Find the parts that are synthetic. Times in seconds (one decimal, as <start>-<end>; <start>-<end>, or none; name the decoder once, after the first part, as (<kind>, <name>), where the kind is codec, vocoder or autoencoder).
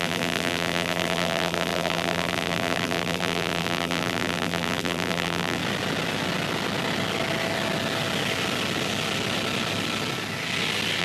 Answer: 0.0-5.6 (vocoder, BigVGAN v2)